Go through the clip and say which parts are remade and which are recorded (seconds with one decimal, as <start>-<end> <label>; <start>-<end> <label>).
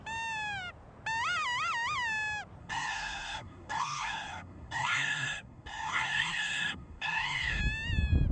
0.0-2.6 recorded; 2.6-7.6 remade; 7.6-8.3 recorded